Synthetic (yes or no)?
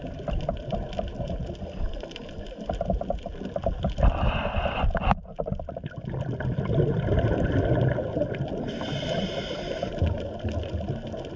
no